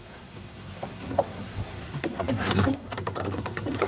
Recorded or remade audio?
remade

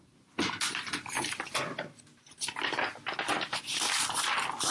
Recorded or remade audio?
recorded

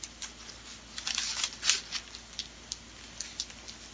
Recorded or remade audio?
recorded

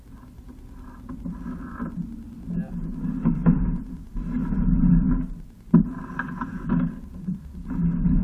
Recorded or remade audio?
recorded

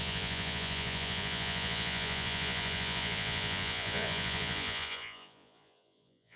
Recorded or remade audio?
remade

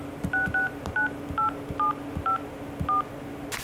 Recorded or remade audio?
recorded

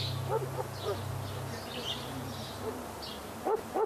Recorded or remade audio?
recorded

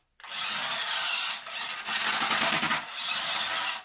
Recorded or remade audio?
recorded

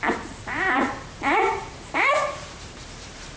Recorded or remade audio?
remade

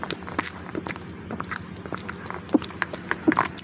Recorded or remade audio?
recorded